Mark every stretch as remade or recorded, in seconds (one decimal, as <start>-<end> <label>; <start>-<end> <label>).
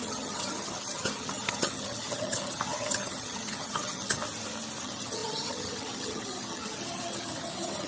0.0-4.2 remade; 4.2-4.8 recorded; 4.8-7.9 remade